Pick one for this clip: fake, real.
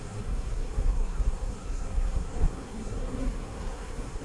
fake